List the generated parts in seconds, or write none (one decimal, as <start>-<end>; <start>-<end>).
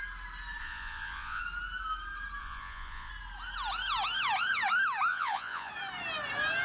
0.6-1.4; 2.4-3.1; 5.1-5.7